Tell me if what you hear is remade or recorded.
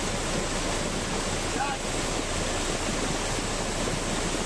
recorded